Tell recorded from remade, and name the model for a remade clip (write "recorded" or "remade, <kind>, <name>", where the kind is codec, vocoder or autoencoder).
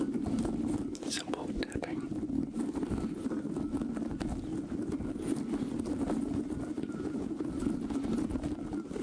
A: recorded